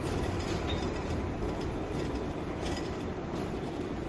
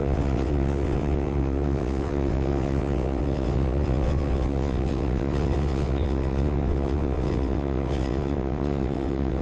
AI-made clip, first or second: second